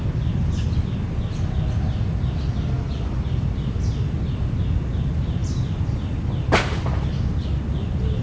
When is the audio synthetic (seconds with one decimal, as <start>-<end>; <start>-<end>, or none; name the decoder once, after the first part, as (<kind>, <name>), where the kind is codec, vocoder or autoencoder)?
none